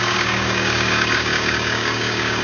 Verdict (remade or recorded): remade